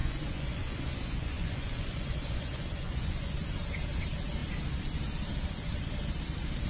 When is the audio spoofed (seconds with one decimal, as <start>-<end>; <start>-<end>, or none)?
0.0-3.3